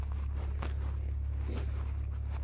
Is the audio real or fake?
real